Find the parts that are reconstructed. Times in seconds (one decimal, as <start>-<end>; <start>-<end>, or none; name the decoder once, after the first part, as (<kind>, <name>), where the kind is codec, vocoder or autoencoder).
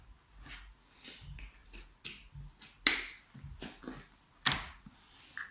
none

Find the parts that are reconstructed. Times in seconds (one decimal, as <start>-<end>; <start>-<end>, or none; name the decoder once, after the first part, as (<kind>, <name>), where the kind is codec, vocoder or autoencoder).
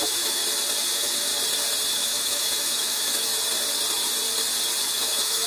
0.0-0.4 (autoencoder, DAC-VAE); 0.9-1.3; 1.9-3.3; 4.8-5.5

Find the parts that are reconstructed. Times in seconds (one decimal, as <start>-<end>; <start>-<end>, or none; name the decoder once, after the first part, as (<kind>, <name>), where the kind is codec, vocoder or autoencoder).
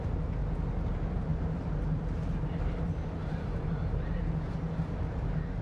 0.0-0.4 (vocoder, BigVGAN v2); 0.9-5.6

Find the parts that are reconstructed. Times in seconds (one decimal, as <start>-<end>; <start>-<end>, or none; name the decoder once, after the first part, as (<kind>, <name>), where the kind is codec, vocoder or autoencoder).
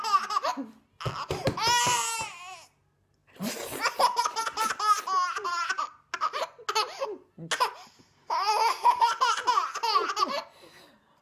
3.2-3.7 (vocoder, BigVGAN v2)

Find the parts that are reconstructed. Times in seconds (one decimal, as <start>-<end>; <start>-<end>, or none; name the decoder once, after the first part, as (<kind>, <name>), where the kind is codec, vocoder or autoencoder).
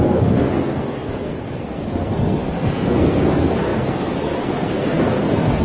0.0-5.6 (codec, SNAC)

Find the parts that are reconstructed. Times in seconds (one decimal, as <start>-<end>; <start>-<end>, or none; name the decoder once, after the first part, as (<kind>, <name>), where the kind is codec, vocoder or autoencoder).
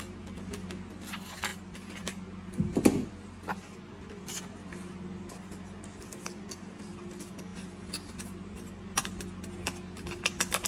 none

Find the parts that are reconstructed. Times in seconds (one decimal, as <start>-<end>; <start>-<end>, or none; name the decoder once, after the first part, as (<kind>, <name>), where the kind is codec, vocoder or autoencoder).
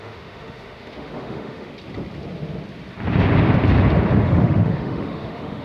0.0-1.7 (autoencoder, DAC-VAE); 4.2-5.6